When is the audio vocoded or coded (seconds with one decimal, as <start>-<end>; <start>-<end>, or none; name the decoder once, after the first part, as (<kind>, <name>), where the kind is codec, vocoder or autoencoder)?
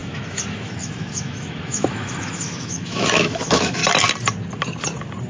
0.0-3.8 (autoencoder, DAC-VAE)